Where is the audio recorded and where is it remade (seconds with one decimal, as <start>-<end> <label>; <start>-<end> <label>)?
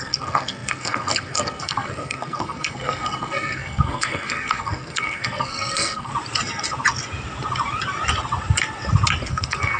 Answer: 0.0-6.1 remade; 6.1-9.3 recorded; 9.3-9.8 remade